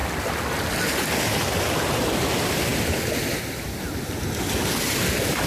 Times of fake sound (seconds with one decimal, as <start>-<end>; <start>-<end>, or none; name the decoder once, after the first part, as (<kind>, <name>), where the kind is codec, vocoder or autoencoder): none